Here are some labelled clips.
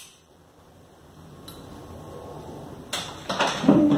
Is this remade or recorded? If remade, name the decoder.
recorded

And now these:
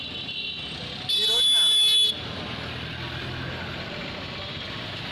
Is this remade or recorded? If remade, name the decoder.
recorded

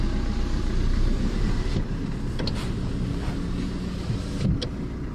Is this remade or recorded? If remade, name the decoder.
recorded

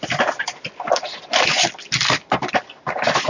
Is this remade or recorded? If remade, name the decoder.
recorded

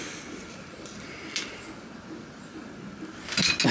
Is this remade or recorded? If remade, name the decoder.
recorded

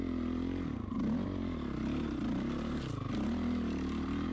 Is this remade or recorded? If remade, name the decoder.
recorded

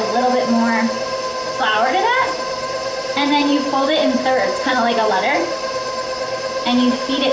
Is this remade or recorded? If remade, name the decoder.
remade, vocoder, BigVGAN v2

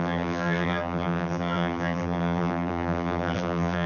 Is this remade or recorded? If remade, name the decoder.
remade, vocoder, BigVGAN v2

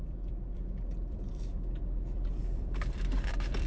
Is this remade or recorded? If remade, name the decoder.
remade, vocoder, BigVGAN v2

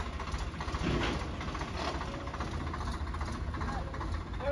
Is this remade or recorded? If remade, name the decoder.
recorded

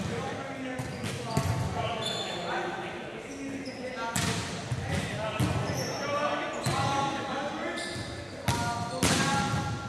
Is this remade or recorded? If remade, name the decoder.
recorded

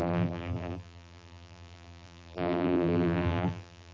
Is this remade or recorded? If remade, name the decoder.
remade, vocoder, BigVGAN v2